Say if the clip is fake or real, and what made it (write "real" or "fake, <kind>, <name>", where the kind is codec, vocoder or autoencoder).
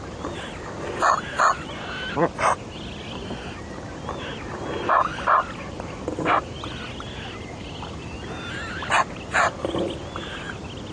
real